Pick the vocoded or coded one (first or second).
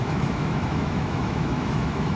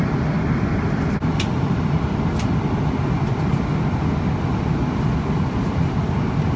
first